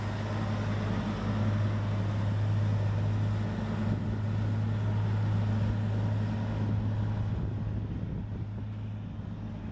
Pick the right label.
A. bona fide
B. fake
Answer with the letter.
A